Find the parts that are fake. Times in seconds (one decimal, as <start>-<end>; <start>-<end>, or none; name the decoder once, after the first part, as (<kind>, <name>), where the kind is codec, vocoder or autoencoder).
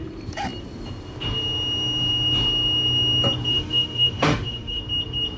3.5-4.8 (autoencoder, DAC-VAE)